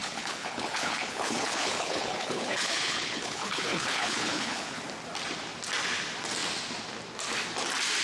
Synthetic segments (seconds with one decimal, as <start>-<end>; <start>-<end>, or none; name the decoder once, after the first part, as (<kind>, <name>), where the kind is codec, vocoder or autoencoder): 0.0-4.8 (codec, HILCodec)